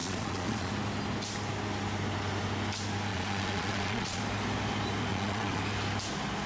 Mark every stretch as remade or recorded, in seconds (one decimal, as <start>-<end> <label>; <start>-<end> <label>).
0.0-0.7 remade; 0.7-3.1 recorded; 3.1-4.2 remade; 4.2-5.1 recorded; 5.1-5.6 remade; 5.6-6.5 recorded